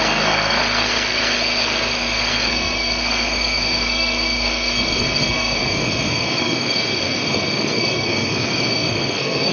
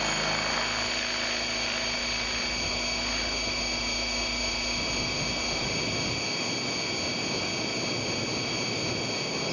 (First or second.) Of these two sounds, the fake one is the first